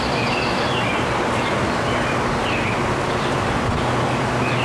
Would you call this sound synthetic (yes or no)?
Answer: no